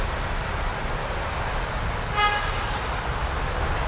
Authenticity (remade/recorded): recorded